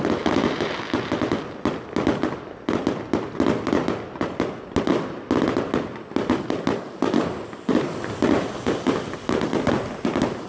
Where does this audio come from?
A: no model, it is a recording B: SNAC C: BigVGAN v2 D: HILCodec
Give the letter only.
A